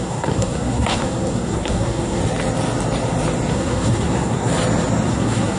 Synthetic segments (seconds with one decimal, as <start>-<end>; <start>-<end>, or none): 0.0-2.2; 3.5-4.5; 5.1-5.6